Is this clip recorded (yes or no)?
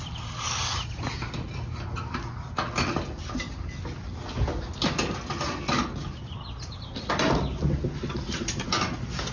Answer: yes